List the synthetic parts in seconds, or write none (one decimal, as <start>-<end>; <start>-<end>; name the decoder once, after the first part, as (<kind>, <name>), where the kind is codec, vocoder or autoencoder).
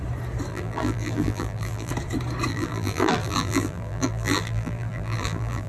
0.5-1.9 (vocoder, BigVGAN v2); 2.5-5.7